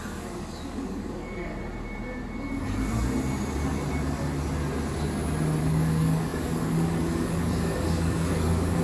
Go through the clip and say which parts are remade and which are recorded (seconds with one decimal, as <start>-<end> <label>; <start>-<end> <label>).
0.0-1.5 remade; 1.5-5.6 recorded; 5.6-8.8 remade